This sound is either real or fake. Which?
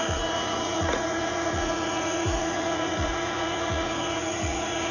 fake